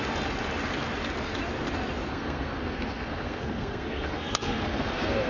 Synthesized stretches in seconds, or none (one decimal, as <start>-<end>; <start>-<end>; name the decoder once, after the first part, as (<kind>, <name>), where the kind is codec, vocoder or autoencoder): 2.1-5.3 (codec, SNAC)